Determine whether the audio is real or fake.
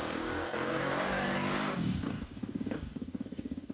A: fake